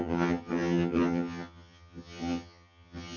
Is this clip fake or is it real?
fake